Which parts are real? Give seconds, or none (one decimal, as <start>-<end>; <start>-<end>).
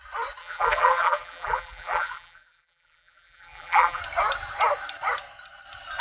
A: 0.0-0.4; 4.0-6.0